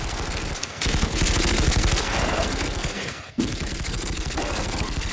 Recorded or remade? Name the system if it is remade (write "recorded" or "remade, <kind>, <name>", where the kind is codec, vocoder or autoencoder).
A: remade, codec, SNAC